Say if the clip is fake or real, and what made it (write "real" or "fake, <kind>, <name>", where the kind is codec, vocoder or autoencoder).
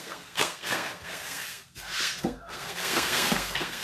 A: fake, codec, SNAC